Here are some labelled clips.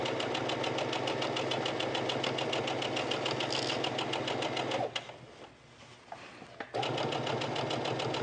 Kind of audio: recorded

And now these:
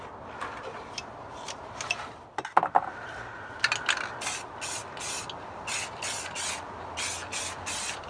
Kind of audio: recorded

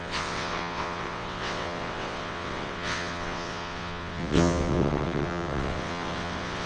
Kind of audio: remade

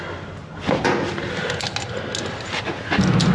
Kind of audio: recorded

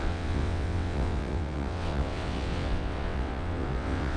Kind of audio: remade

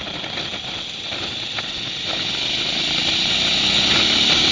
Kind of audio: recorded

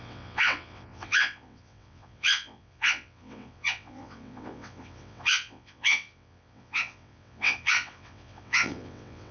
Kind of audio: remade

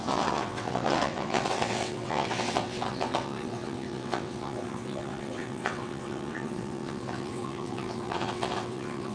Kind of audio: remade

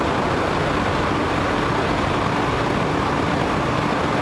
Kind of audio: recorded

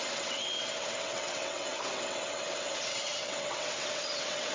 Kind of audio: remade